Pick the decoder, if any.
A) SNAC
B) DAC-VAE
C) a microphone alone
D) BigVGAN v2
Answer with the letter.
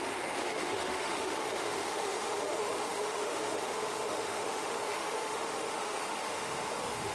B